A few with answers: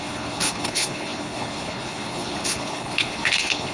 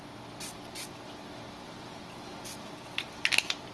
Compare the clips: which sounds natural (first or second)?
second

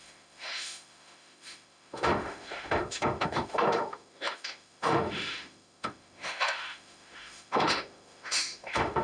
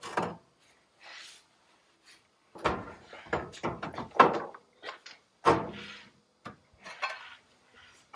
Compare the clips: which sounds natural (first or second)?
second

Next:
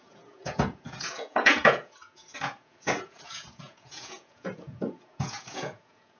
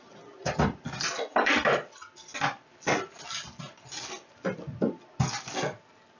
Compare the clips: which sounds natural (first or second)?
second